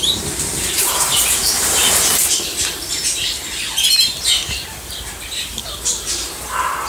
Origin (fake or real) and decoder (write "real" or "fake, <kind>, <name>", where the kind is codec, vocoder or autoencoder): fake, vocoder, BigVGAN v2